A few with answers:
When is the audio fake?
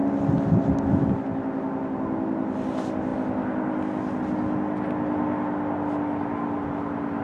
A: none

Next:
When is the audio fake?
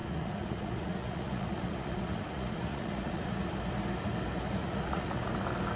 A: 0.0-3.5; 4.6-5.3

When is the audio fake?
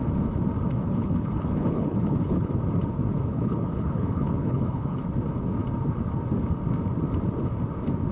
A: 0.8-2.5; 3.3-5.0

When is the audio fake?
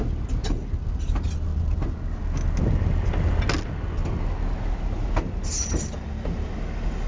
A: none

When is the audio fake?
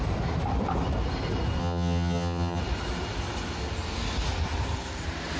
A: 1.6-2.6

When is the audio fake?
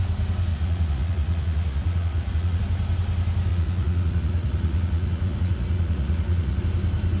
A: 0.5-2.6; 3.5-6.6